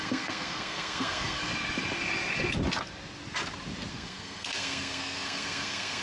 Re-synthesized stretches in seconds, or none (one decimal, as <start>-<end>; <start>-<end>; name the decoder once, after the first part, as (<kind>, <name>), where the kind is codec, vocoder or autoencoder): 0.0-1.5 (codec, SNAC); 3.9-6.0